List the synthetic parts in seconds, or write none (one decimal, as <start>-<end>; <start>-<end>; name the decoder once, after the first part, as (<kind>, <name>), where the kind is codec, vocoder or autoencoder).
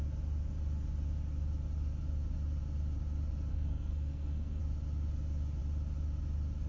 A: 3.5-4.6 (codec, SNAC)